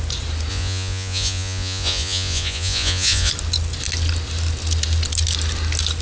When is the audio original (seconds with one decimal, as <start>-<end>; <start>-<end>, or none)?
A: 0.0-0.5; 3.3-6.0